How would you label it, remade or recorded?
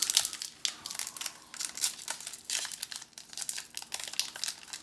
recorded